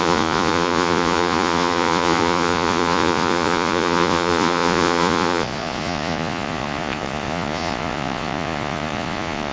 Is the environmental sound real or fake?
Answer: fake